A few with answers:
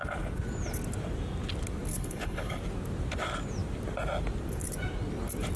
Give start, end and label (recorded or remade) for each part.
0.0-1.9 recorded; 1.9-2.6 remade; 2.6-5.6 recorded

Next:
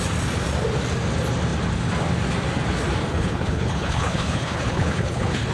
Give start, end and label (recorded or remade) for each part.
0.0-3.1 recorded; 3.1-5.5 remade

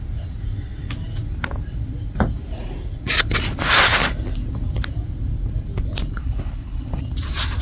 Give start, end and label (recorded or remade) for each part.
0.0-6.2 recorded; 6.2-7.0 remade; 7.0-7.6 recorded